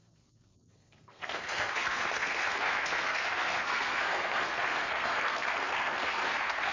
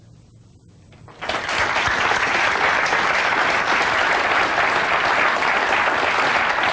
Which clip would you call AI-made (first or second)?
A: first